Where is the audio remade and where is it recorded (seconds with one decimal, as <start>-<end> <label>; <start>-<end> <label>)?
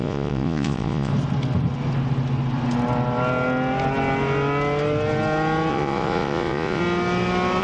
0.0-1.1 remade; 1.1-5.7 recorded; 5.7-6.8 remade; 6.8-7.6 recorded